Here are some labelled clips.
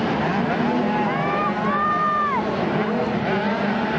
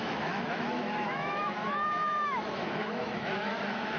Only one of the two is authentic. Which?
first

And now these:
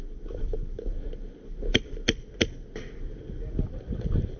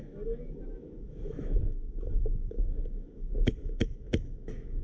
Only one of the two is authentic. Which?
first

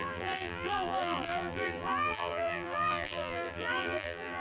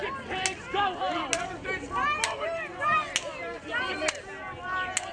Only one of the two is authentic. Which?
second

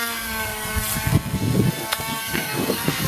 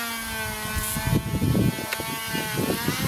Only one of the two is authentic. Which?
second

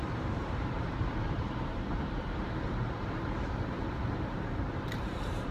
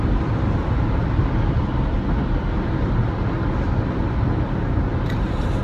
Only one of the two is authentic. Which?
second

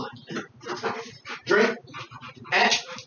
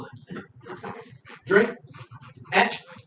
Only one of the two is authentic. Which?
first